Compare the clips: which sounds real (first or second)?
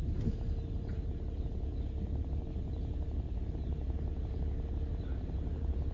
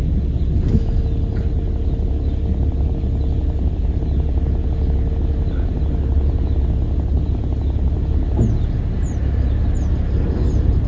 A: second